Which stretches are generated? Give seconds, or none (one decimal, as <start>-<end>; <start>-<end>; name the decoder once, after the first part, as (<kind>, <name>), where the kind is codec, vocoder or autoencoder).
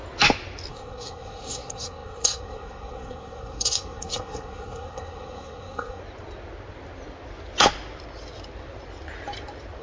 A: 0.7-6.0 (codec, SNAC)